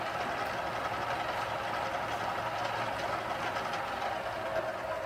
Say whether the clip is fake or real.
real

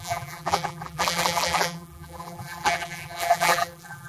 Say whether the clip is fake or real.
fake